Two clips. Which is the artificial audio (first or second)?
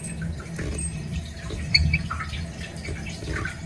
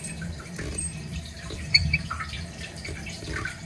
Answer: second